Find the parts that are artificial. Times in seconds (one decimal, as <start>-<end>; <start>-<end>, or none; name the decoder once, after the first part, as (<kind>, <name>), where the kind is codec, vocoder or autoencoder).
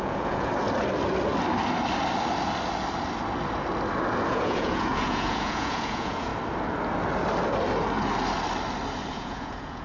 0.0-0.5 (vocoder, Vocos); 4.3-6.3; 9.1-9.8